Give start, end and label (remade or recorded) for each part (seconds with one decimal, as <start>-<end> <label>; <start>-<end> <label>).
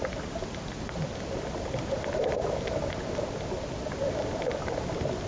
0.0-5.3 recorded